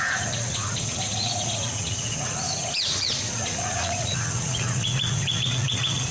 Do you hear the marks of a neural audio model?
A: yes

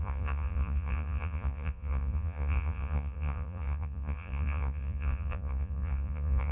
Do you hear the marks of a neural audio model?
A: yes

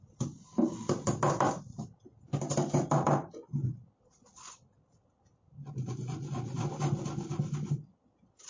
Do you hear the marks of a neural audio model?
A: no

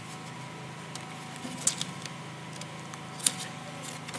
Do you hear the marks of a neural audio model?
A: no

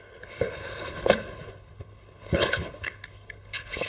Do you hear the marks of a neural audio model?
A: yes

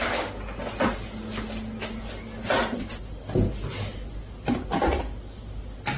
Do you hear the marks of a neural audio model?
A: no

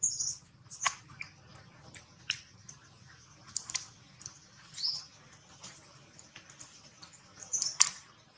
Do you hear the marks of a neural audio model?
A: no